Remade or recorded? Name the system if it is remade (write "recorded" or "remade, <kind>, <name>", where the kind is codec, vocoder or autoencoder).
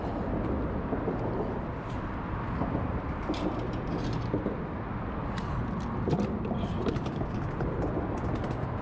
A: recorded